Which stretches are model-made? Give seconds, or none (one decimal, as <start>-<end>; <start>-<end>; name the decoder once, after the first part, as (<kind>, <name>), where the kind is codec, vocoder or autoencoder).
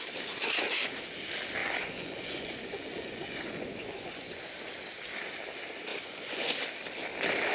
1.6-4.4 (vocoder, Vocos); 5.9-6.5